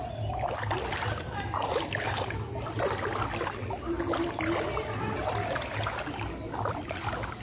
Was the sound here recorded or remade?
recorded